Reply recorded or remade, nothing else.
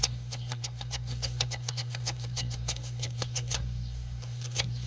remade